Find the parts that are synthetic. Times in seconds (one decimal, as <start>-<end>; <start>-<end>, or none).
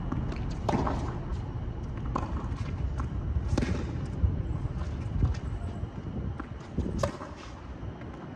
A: none